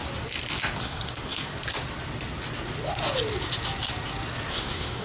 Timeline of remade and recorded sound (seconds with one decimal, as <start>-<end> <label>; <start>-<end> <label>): 0.0-0.8 recorded; 0.8-1.5 remade; 1.5-4.5 recorded; 4.5-5.0 remade